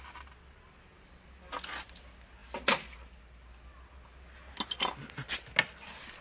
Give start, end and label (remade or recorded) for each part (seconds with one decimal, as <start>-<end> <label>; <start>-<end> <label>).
0.0-6.2 recorded